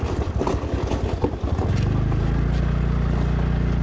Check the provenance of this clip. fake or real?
real